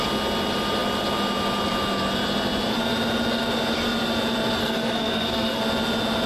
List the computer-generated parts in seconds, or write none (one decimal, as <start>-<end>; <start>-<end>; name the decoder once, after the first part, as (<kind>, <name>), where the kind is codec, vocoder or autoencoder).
4.6-5.6 (codec, SNAC)